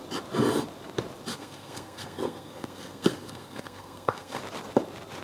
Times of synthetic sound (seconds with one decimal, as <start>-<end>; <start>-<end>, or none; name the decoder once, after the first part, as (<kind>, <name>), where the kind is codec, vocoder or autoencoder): 1.3-4.4 (codec, SNAC)